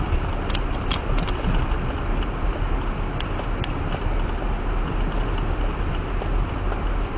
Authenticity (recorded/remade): recorded